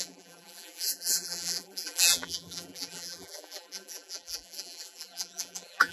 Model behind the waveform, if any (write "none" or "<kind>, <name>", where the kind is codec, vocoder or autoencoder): vocoder, BigVGAN v2